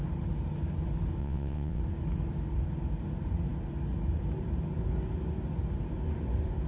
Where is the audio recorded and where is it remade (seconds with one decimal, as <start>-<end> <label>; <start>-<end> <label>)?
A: 0.0-1.2 recorded; 1.2-1.8 remade; 1.8-6.7 recorded